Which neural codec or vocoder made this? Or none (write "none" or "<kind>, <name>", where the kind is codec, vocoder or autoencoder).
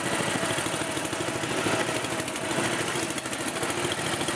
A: none